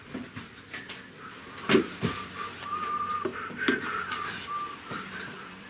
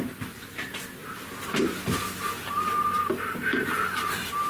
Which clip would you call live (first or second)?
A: second